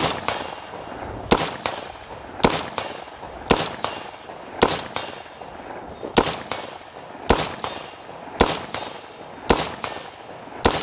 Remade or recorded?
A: recorded